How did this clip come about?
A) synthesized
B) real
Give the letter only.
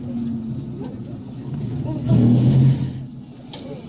B